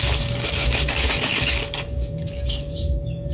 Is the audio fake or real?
fake